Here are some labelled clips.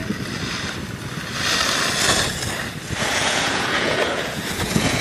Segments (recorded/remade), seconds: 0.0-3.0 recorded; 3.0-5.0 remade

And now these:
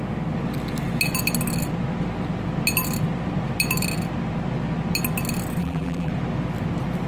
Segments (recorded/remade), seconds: 0.0-5.6 recorded; 5.6-6.1 remade; 6.1-7.1 recorded

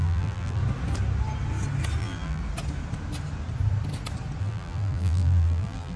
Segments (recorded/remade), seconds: 0.0-0.6 remade; 0.6-2.0 recorded; 2.0-2.4 remade; 2.4-4.4 recorded; 4.4-6.0 remade

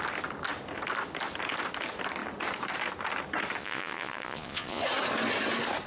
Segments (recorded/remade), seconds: 0.0-3.6 recorded; 3.6-4.8 remade; 4.8-5.9 recorded